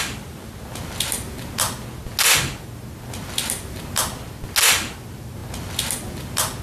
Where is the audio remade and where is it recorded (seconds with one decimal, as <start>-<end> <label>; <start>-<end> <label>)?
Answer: 0.0-6.6 recorded